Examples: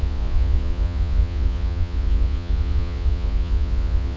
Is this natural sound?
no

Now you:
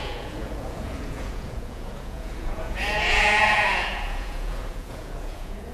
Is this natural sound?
no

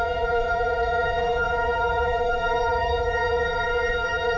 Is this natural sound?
no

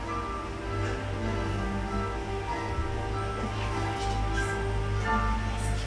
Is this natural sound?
yes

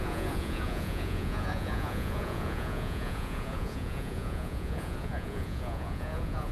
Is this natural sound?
no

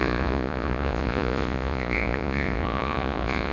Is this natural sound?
no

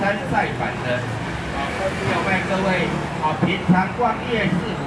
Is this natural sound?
yes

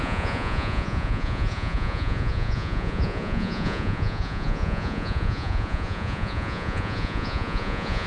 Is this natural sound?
no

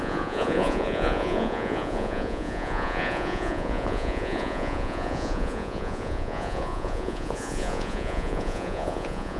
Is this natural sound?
no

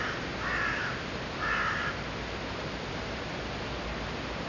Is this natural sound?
yes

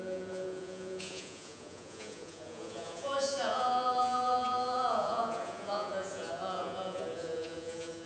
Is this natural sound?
no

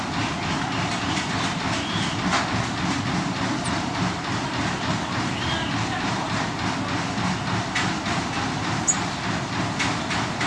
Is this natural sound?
yes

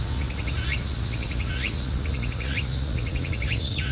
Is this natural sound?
no